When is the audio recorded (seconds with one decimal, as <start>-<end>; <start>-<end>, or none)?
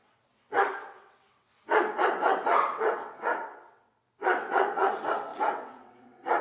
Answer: none